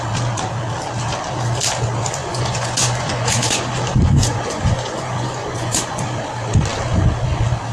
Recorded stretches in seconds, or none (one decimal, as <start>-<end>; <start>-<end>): 0.0-2.2; 6.0-7.7